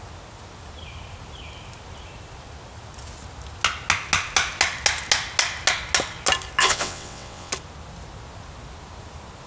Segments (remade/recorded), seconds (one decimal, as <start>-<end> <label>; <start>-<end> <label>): 0.0-6.6 recorded; 6.6-7.5 remade; 7.5-9.5 recorded